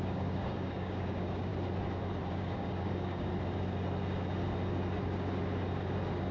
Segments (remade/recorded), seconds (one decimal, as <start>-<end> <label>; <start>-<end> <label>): 0.0-1.5 remade; 1.5-2.3 recorded; 2.3-3.3 remade; 3.3-6.3 recorded